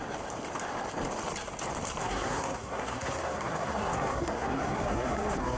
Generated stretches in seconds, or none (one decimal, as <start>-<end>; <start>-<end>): 2.0-5.6